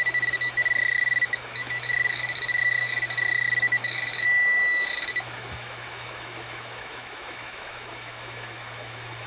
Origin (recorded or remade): remade